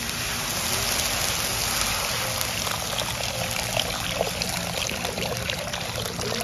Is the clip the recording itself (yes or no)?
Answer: yes